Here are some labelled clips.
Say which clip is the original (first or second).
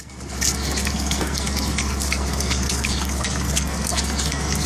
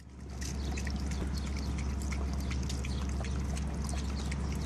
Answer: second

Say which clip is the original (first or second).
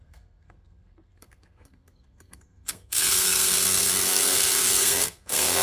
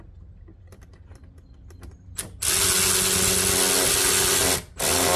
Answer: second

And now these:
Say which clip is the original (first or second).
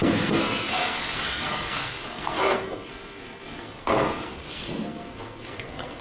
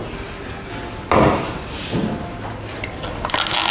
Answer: second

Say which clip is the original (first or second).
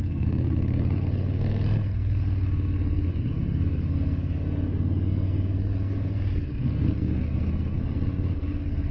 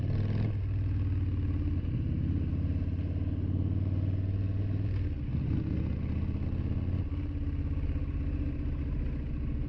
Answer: second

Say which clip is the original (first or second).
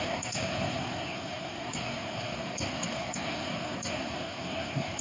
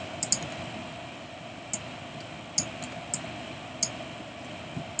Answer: second